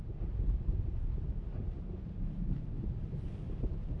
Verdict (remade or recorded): recorded